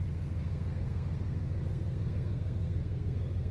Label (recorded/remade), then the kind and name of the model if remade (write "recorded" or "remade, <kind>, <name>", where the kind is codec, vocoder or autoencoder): remade, codec, SNAC